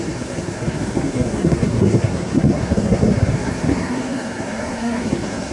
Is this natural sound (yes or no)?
no